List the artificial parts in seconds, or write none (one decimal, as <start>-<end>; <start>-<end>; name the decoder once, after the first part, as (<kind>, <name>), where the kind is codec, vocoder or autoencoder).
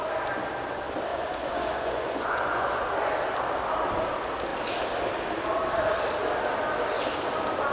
1.1-3.1 (vocoder, Vocos)